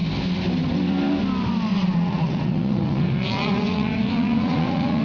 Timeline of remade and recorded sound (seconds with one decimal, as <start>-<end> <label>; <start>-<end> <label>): 0.0-1.7 recorded; 1.7-5.0 remade